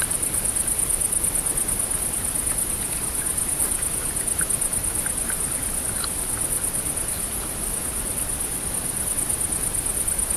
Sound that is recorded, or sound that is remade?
recorded